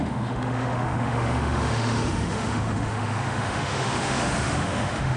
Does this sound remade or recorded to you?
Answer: remade